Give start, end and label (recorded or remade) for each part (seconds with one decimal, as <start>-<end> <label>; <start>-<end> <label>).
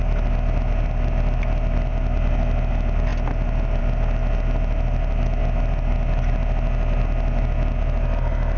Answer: 0.0-8.6 recorded